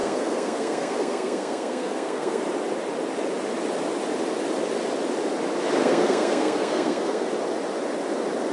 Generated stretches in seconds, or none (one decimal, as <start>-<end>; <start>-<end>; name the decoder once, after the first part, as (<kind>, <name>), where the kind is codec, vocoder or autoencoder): 0.0-2.4 (codec, SNAC); 5.8-7.3